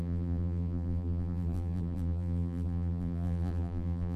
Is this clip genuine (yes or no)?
no